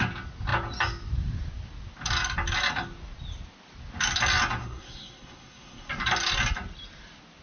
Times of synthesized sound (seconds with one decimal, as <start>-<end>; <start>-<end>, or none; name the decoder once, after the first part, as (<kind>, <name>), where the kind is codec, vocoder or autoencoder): 4.6-5.9 (codec, SNAC)